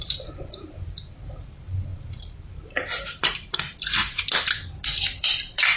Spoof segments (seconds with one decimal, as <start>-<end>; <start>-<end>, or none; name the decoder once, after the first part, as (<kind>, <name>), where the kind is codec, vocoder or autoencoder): 0.0-4.0 (vocoder, BigVGAN v2); 5.2-5.8